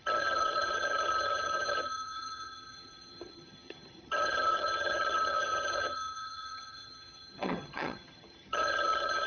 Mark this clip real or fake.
fake